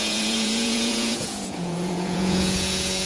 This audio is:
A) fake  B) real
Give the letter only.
A